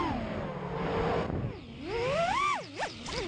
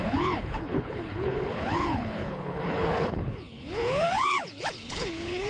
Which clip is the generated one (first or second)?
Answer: second